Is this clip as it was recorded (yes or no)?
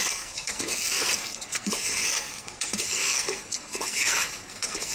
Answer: no